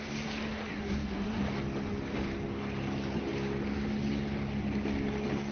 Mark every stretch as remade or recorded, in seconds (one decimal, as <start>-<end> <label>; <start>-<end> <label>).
0.0-0.7 recorded; 0.7-1.4 remade; 1.4-5.5 recorded